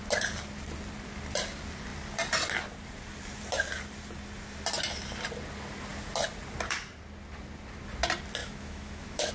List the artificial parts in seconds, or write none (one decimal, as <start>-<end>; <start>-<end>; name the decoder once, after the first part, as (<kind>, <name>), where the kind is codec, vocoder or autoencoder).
8.4-9.3 (autoencoder, DAC-VAE)